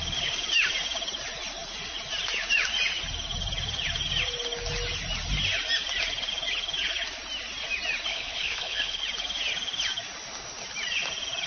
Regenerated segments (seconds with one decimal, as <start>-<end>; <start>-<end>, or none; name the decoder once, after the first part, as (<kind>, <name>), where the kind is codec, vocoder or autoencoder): 8.1-9.0 (codec, HILCodec)